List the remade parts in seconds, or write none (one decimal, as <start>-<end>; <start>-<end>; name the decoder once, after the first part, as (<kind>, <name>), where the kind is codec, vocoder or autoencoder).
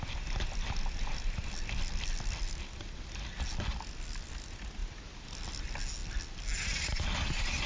none